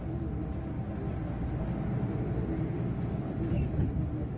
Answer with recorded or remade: recorded